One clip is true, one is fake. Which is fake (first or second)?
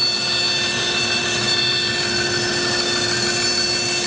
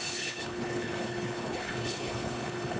second